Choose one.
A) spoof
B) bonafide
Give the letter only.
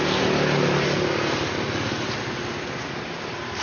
B